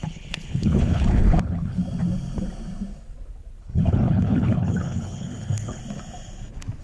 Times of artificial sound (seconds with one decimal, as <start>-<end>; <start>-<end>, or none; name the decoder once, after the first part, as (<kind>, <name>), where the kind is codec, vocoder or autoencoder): 0.0-1.8 (codec, HILCodec); 3.6-5.8